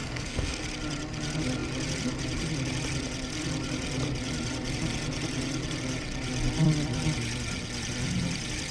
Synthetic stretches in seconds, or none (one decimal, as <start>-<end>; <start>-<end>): 0.0-0.6